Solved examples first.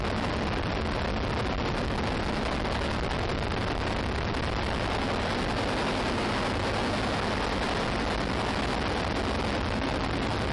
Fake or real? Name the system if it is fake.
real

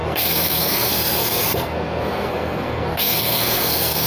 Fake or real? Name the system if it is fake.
fake, codec, SNAC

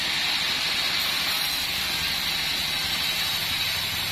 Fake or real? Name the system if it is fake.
real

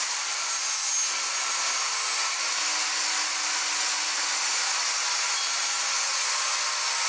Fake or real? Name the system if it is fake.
real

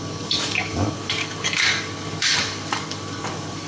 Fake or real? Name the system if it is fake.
fake, codec, DAC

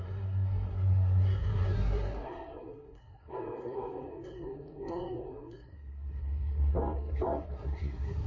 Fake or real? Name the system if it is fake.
fake, codec, SNAC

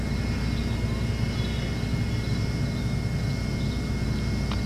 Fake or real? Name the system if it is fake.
real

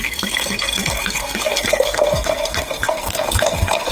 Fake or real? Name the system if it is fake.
fake, codec, SNAC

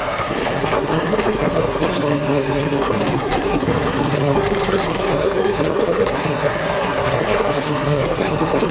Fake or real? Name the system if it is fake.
fake, codec, SNAC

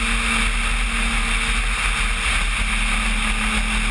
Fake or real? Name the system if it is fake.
real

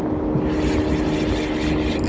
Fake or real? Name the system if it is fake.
real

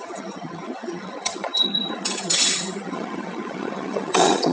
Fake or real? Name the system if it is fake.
fake, vocoder, HiFi-GAN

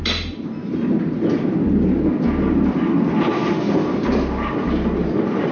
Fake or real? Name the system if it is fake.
real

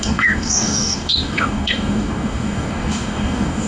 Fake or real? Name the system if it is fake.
fake, codec, DAC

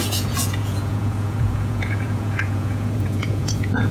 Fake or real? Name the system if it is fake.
fake, vocoder, Vocos